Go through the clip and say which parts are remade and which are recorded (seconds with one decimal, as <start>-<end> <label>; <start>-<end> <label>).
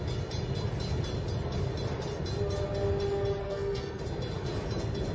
0.0-3.4 recorded; 3.4-4.0 remade; 4.0-5.1 recorded